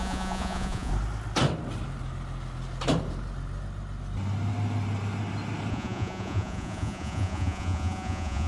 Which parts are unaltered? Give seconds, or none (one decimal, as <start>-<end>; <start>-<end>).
0.9-5.7